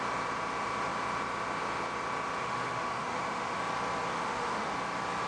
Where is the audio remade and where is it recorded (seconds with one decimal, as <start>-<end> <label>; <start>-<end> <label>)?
0.0-2.4 recorded; 2.4-3.6 remade; 3.6-4.1 recorded; 4.1-4.7 remade; 4.7-5.3 recorded